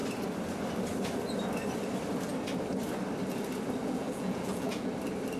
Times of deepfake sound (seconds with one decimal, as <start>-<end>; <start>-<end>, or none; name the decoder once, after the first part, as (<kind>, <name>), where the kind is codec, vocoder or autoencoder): 3.8-4.9 (vocoder, Vocos)